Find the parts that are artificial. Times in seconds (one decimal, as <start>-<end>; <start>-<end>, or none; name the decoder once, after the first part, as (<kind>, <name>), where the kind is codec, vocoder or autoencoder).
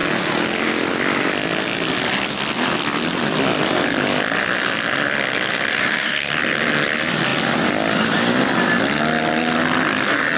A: 5.7-6.3 (codec, DAC)